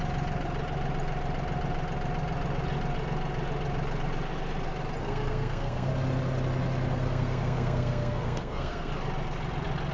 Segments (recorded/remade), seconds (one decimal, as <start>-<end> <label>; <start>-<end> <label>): 0.0-5.0 recorded; 5.0-5.9 remade; 5.9-6.9 recorded; 6.9-8.9 remade; 8.9-9.9 recorded